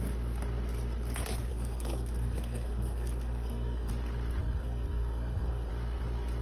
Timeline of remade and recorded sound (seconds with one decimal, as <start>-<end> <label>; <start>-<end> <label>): 0.0-1.5 recorded; 1.5-3.9 remade; 3.9-4.4 recorded; 4.4-5.7 remade; 5.7-6.4 recorded